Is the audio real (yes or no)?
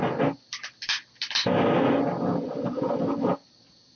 yes